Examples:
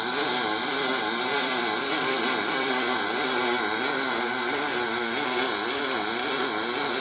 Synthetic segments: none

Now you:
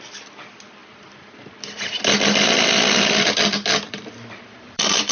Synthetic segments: 0.0-0.8 (vocoder, BigVGAN v2); 3.9-5.1

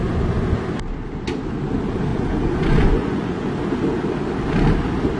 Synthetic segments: 2.1-3.5 (vocoder, Vocos)

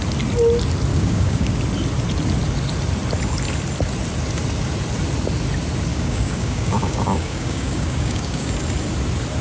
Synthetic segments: 0.9-1.5 (codec, DAC); 5.9-8.5

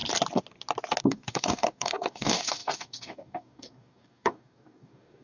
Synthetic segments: 1.0-5.2 (codec, DAC)

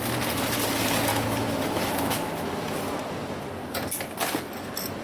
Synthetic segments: 1.1-2.7 (autoencoder, DAC-VAE)